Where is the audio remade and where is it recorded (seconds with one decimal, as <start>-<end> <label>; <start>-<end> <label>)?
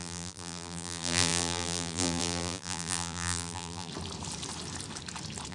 0.0-3.9 remade; 3.9-5.5 recorded